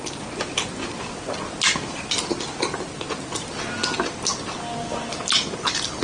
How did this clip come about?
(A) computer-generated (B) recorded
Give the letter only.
B